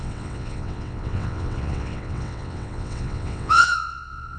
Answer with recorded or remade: remade